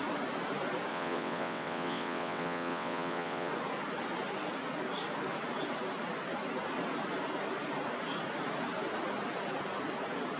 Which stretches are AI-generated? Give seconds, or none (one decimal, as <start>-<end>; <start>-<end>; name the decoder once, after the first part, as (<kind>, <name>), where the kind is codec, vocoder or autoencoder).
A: 0.9-3.5 (vocoder, WaveNeXt)